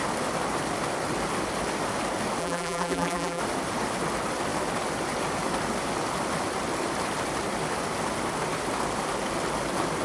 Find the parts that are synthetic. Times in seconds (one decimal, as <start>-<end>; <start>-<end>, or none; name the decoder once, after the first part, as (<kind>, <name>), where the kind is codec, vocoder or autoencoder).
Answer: 2.4-3.4 (vocoder, BigVGAN v2)